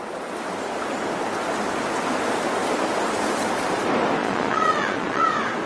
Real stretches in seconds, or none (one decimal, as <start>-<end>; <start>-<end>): 0.0-4.2; 5.3-5.7